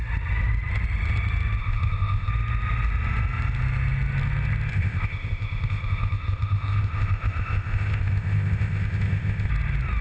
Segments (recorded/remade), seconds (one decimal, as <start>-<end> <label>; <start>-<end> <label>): 0.0-1.6 recorded; 1.6-2.3 remade; 2.3-4.7 recorded; 4.7-9.5 remade; 9.5-10.0 recorded